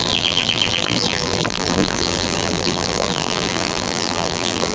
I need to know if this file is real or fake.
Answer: fake